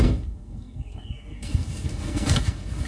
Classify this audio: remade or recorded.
remade